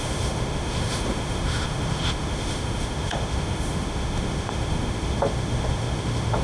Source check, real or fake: fake